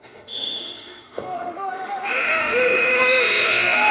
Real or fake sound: fake